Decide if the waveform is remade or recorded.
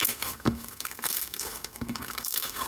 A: remade